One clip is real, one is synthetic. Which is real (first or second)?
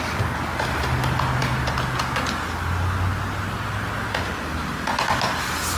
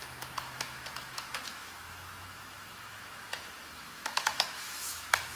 first